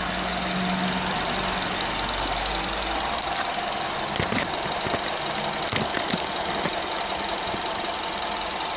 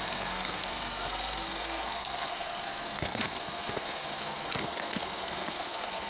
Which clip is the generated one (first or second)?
second